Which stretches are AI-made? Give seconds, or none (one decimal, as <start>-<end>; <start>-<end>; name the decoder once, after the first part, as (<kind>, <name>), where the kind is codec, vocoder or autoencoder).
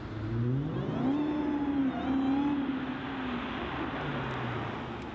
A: none